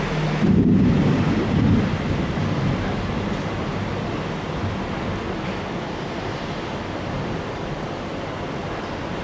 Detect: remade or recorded recorded